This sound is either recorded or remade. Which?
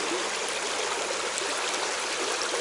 recorded